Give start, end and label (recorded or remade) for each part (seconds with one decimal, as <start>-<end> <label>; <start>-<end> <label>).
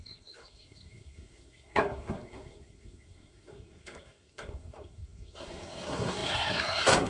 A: 0.0-7.1 remade